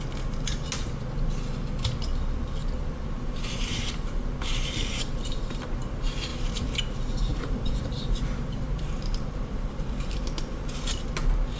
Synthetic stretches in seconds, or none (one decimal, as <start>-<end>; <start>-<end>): 2.6-5.6; 6.3-6.8; 7.3-10.1